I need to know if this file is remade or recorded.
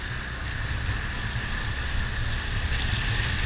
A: recorded